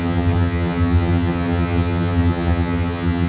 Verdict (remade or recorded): remade